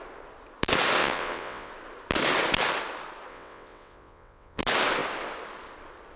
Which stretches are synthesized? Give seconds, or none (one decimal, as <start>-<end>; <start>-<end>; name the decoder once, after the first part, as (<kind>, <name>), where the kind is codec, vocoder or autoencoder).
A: 1.0-1.7 (vocoder, WaveNeXt); 3.3-4.6